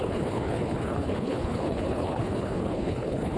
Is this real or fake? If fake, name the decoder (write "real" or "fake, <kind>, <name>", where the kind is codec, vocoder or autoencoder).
fake, codec, HILCodec